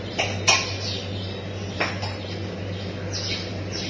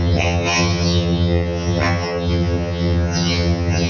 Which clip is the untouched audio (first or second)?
first